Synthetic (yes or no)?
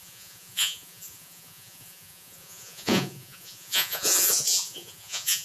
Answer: yes